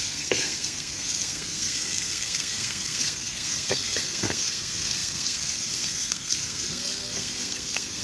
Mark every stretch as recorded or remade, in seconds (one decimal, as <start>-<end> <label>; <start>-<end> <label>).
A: 0.0-8.0 remade